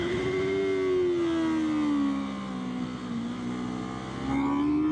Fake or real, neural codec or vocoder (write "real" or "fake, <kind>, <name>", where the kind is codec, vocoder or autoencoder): real